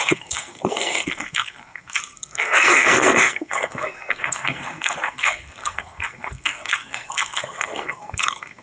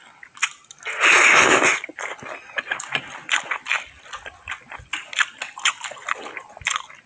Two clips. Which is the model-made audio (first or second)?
first